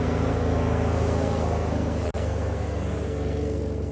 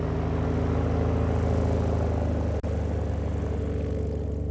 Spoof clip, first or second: first